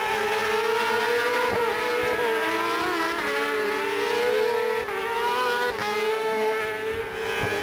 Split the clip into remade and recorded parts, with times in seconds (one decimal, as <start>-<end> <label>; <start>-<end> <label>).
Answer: 0.0-6.1 recorded; 6.1-6.6 remade; 6.6-7.6 recorded